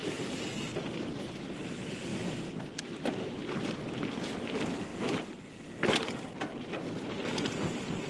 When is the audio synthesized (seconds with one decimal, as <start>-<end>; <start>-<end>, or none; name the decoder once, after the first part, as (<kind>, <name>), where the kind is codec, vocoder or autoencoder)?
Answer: 2.1-2.6 (vocoder, BigVGAN v2)